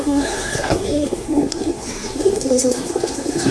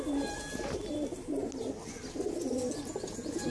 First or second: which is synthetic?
first